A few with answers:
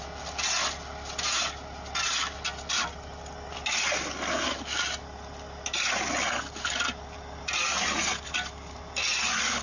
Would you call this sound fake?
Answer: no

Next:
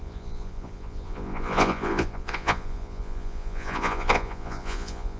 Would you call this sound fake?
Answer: yes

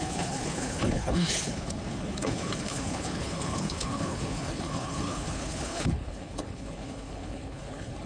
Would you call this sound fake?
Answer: yes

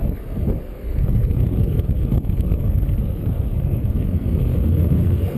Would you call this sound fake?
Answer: yes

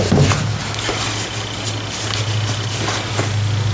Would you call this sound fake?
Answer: no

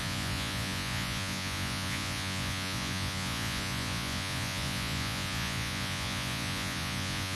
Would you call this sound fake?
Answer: yes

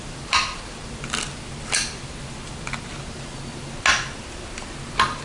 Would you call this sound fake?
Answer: no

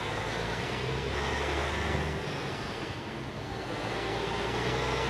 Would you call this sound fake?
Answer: yes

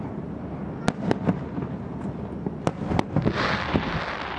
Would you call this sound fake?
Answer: no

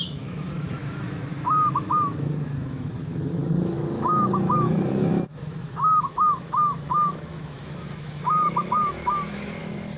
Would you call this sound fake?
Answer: yes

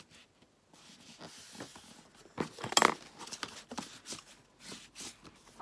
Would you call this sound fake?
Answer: no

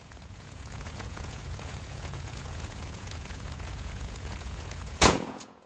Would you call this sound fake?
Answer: yes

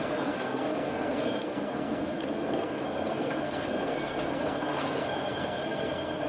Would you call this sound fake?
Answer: yes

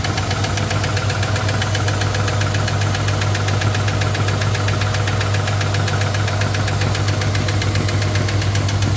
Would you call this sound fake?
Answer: no